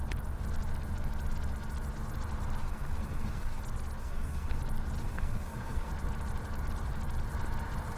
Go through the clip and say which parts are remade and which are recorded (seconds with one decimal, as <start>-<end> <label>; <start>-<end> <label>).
0.0-2.6 recorded; 2.6-3.6 remade; 3.6-4.0 recorded; 4.0-4.6 remade; 4.6-5.0 recorded; 5.0-5.9 remade; 5.9-8.0 recorded